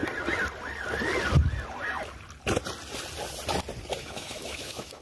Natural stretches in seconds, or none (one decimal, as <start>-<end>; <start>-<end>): 0.0-4.0